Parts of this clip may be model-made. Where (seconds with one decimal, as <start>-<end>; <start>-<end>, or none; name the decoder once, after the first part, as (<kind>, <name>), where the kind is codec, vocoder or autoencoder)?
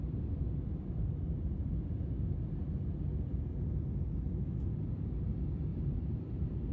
5.7-6.7 (vocoder, BigVGAN v2)